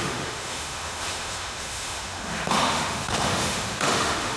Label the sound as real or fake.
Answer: fake